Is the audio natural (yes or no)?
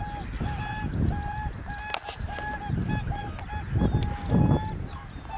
yes